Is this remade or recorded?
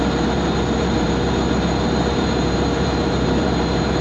remade